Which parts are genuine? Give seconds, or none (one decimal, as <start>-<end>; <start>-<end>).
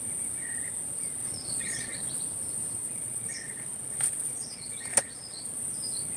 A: 0.0-1.2; 2.2-2.8; 5.6-6.2